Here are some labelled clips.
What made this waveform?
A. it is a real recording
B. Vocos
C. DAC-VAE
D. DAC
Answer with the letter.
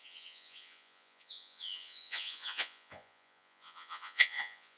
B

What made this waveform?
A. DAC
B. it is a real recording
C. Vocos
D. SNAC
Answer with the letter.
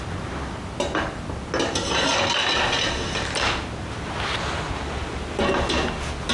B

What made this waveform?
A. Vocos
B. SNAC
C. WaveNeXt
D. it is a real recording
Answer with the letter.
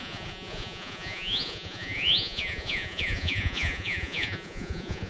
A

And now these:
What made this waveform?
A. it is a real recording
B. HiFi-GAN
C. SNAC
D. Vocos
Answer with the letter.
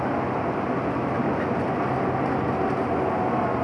A